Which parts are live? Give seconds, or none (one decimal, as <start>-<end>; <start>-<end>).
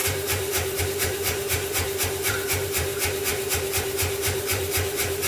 2.9-3.7